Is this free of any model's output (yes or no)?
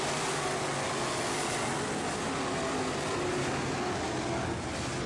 yes